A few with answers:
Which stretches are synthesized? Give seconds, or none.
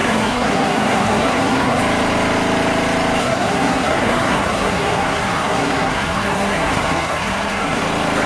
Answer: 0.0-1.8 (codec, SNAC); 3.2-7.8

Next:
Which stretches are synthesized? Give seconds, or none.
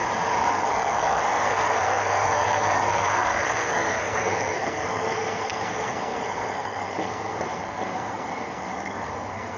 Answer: 0.5-9.6 (codec, SNAC)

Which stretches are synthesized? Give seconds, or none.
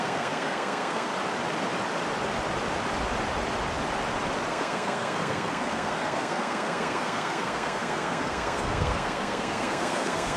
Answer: 0.0-1.1 (codec, SNAC); 4.5-10.4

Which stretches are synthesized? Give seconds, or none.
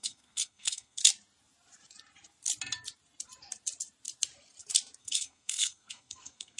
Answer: 0.0-1.0 (codec, SNAC); 5.0-6.6